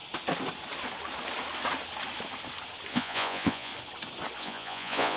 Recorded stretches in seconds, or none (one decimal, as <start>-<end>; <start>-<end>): 0.0-2.9; 3.7-4.4